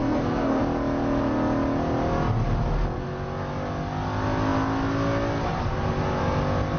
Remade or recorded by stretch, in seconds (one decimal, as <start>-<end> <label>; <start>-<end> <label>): 0.0-0.6 remade; 0.6-6.8 recorded